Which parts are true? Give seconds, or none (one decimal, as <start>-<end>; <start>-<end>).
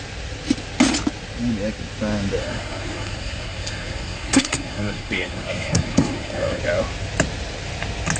0.0-2.4; 6.6-8.2